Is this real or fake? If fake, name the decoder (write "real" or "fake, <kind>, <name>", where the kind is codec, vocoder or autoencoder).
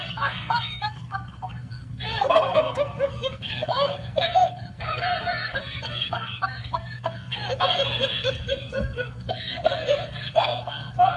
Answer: fake, codec, SNAC